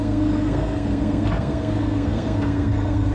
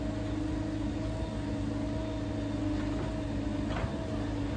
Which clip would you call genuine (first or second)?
second